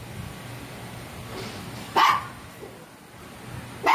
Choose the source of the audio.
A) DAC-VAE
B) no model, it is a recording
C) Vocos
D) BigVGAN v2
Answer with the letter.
B